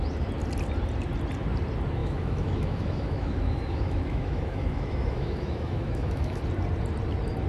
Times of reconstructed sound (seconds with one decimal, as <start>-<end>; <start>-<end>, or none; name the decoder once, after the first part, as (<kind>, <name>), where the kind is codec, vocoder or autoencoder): 2.0-6.4 (autoencoder, DAC-VAE)